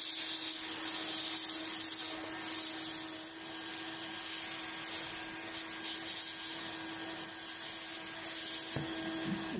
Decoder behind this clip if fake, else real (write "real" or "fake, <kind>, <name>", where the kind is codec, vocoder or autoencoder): real